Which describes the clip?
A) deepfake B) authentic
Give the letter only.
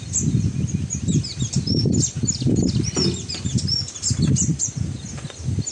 B